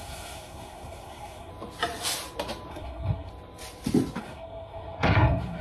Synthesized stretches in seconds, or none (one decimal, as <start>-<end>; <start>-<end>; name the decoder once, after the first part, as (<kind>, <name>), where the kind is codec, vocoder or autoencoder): 0.0-1.5 (codec, SNAC); 2.7-3.3; 4.2-5.6